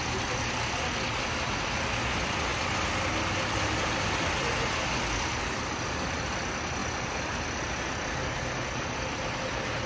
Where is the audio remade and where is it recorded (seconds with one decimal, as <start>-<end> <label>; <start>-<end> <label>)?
0.0-9.9 recorded